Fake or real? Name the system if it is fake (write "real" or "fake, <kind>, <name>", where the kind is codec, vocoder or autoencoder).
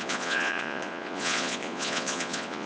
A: fake, vocoder, Vocos